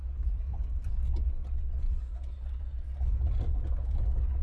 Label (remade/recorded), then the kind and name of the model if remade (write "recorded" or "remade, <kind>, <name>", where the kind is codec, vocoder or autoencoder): recorded